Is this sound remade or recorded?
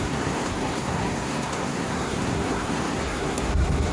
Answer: remade